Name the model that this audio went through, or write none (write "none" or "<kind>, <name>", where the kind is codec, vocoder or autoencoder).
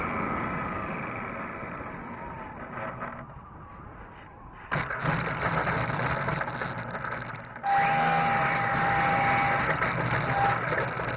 none